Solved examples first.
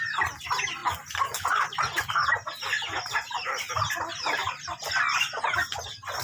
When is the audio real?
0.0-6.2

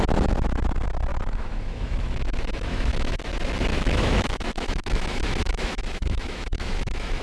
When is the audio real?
0.0-1.1; 3.2-3.7